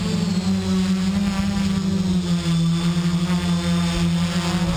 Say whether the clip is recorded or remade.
recorded